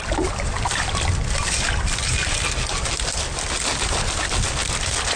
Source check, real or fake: real